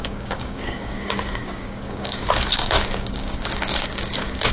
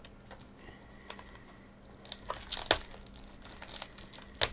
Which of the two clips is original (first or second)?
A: second